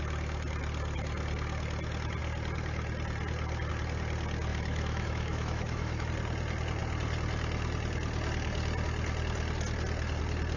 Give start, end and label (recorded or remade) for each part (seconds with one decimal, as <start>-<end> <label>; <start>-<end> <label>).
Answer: 0.0-4.5 recorded; 4.5-6.1 remade; 6.1-10.6 recorded